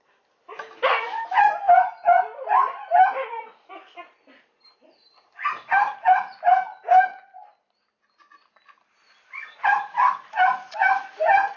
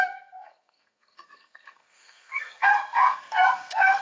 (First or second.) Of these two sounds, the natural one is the first